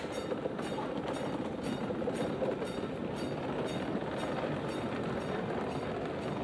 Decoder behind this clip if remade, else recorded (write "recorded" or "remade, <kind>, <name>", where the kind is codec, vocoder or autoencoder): recorded